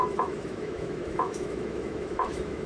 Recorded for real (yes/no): no